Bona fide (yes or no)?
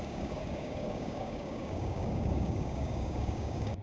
no